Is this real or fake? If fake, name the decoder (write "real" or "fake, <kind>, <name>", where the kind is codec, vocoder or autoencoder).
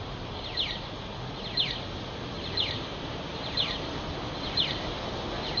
real